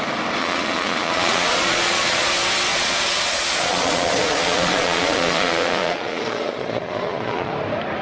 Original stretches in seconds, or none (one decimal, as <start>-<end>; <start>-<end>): 0.0-0.4; 2.3-2.7; 7.5-8.0